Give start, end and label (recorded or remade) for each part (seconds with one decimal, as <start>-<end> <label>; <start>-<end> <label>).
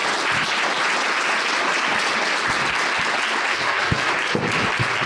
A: 0.0-3.5 recorded; 3.5-4.1 remade; 4.1-5.1 recorded